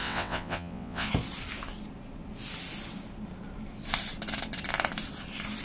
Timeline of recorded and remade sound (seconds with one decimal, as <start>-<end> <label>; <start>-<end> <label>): 0.0-1.1 remade; 1.1-5.6 recorded